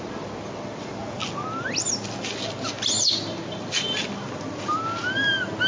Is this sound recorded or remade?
recorded